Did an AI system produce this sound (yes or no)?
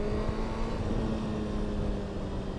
no